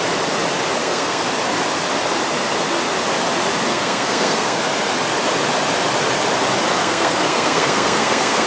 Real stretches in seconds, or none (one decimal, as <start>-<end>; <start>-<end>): 0.0-0.8; 1.3-3.7; 4.6-6.8